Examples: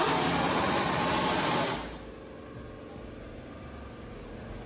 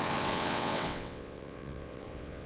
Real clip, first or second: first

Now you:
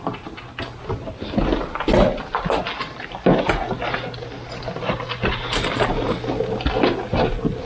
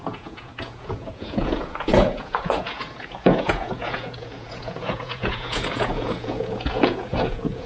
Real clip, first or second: first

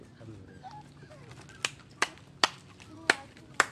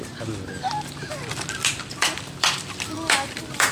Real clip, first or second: first